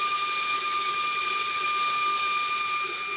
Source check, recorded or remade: recorded